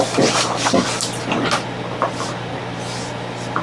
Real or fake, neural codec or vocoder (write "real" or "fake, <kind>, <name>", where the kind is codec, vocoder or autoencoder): real